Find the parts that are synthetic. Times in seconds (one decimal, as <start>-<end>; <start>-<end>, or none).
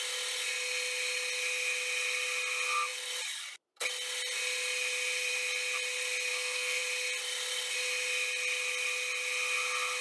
6.3-6.8